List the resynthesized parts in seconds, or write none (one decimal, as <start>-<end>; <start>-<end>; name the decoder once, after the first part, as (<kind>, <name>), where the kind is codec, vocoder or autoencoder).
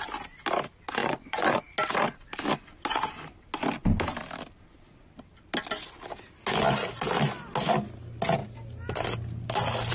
1.0-1.6 (vocoder, Vocos)